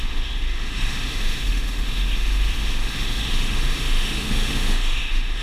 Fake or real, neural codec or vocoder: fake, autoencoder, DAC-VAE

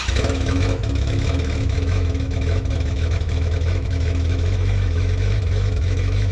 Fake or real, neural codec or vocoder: fake, autoencoder, DAC-VAE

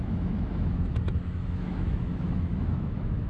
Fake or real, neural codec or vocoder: fake, autoencoder, DAC-VAE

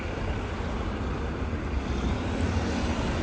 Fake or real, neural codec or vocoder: real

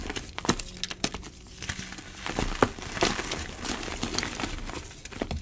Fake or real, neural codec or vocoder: real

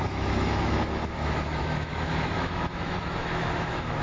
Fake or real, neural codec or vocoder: fake, autoencoder, DAC-VAE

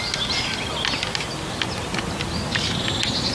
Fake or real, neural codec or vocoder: real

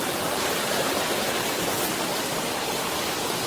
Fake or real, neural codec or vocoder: real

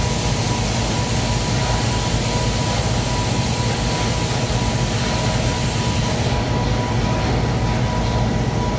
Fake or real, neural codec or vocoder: real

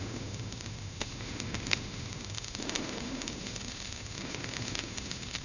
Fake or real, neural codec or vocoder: fake, autoencoder, DAC-VAE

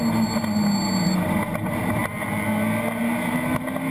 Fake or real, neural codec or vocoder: real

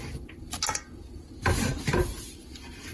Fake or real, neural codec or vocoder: real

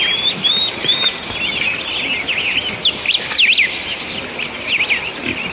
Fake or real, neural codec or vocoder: real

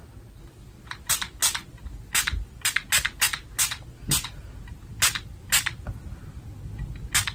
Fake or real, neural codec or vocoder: real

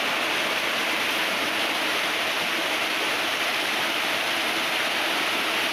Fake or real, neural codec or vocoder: real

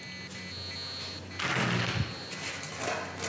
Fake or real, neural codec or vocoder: real